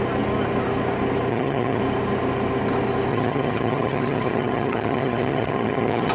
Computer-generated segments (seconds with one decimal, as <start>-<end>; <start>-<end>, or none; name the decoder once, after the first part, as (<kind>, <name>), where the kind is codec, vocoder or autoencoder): 1.3-1.8 (vocoder, HiFi-GAN); 3.1-6.1

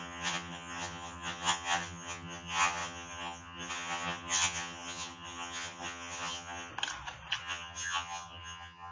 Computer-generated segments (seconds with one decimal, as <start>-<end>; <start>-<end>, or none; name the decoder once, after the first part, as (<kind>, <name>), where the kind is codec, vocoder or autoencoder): 0.0-6.7 (vocoder, HiFi-GAN); 7.4-8.9

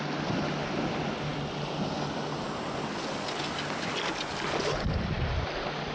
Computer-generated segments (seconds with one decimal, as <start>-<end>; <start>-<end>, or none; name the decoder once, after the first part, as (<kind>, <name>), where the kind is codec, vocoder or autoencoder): none

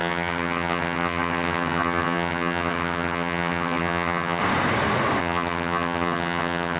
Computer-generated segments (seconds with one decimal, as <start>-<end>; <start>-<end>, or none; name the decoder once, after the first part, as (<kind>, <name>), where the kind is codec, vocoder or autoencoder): 0.0-4.4 (vocoder, HiFi-GAN); 5.2-6.8

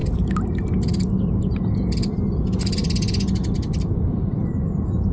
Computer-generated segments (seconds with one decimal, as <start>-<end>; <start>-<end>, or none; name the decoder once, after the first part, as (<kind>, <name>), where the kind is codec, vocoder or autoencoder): none

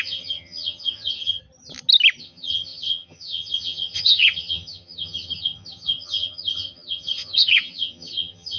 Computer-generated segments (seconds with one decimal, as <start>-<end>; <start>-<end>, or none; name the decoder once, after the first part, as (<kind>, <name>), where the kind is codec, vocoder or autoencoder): 0.0-1.4 (vocoder, HiFi-GAN); 2.2-8.6

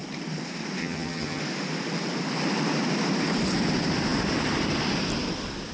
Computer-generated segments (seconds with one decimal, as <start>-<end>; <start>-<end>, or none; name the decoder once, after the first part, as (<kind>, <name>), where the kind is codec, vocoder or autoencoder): 0.8-1.4 (vocoder, HiFi-GAN)

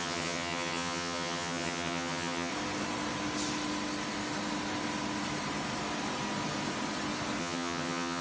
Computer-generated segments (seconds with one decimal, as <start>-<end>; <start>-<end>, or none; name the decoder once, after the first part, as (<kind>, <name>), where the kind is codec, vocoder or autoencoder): 0.0-2.5 (vocoder, HiFi-GAN); 7.4-8.2